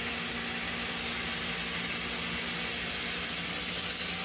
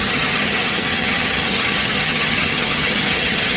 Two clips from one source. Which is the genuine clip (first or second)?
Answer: first